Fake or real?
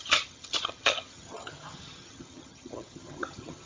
fake